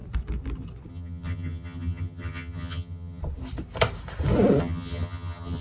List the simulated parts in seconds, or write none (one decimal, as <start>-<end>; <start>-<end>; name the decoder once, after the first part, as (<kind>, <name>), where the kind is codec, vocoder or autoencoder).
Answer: 0.9-3.2 (vocoder, HiFi-GAN); 4.6-5.6